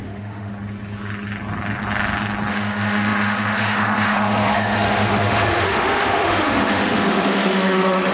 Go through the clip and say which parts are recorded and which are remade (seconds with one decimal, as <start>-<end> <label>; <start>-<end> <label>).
0.0-0.5 remade; 0.5-2.5 recorded; 2.5-8.1 remade